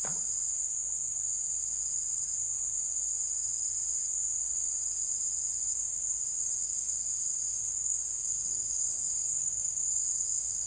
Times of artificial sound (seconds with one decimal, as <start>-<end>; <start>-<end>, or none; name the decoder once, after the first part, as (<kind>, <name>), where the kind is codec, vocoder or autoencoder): 5.7-10.7 (codec, DAC)